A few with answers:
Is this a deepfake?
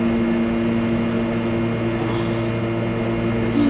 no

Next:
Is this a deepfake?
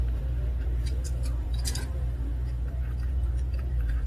yes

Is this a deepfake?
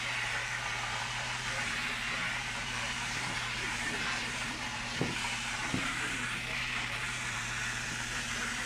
yes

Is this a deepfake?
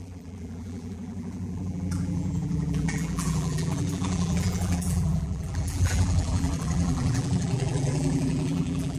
yes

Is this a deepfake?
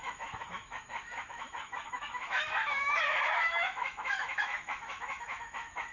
yes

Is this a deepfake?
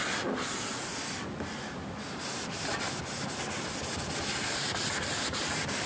no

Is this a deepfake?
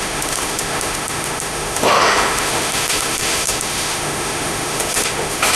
yes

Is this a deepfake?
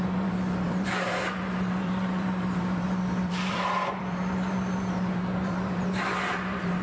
yes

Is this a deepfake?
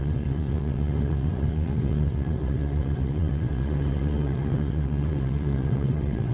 yes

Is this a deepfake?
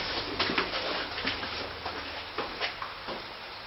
no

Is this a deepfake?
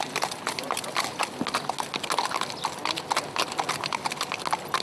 no